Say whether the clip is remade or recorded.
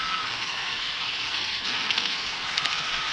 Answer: remade